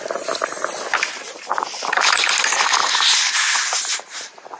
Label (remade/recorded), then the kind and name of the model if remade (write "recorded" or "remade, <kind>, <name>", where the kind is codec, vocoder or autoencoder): recorded